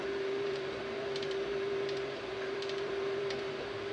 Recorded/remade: remade